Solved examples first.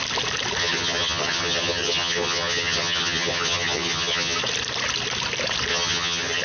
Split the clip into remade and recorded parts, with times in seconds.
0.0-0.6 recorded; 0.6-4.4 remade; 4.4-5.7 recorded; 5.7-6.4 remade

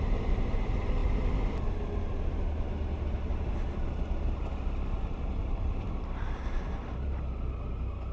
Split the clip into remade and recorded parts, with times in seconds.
0.0-8.1 recorded